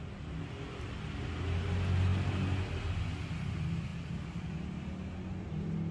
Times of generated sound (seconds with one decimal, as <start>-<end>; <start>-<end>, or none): none